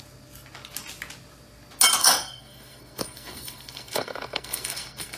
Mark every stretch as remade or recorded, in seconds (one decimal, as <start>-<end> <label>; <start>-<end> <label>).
0.0-2.0 recorded; 2.0-5.2 remade